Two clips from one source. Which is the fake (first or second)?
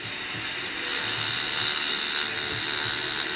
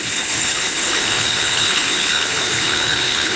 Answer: second